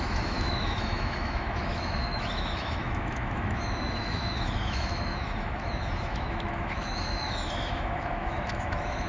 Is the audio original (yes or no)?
no